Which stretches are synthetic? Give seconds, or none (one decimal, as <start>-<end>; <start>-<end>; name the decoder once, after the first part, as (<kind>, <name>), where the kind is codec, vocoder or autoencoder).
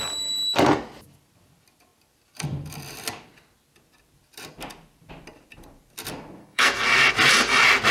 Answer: 6.4-7.1 (codec, SNAC)